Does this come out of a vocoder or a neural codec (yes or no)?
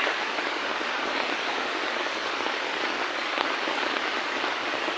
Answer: yes